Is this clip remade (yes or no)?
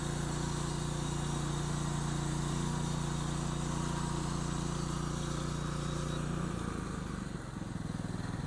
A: no